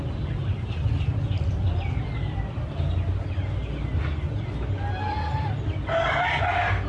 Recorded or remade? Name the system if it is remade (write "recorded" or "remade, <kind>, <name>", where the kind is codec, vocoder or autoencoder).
recorded